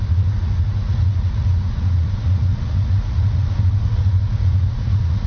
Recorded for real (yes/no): no